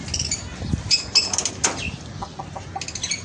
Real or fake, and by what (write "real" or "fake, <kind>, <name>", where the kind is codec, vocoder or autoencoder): real